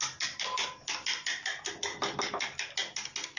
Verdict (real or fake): real